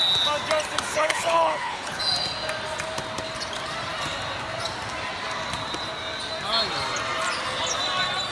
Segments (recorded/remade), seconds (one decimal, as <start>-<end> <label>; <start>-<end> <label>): 0.0-0.9 recorded; 0.9-2.0 remade; 2.0-8.3 recorded